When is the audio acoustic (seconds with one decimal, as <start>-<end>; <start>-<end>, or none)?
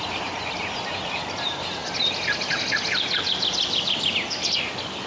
0.0-5.1